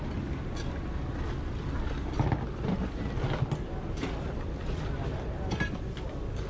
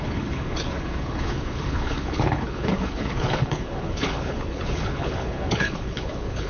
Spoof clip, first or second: second